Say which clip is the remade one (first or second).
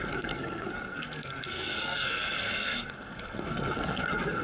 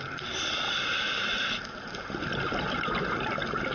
first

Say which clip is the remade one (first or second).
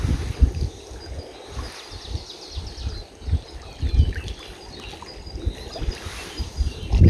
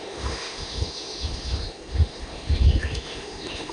second